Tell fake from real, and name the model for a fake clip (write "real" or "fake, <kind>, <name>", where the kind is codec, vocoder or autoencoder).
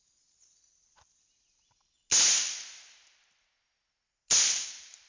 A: real